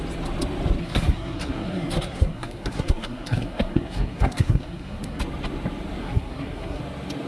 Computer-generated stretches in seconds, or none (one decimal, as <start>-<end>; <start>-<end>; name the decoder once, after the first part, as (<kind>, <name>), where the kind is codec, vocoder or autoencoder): 0.8-5.2 (codec, SNAC); 6.0-6.8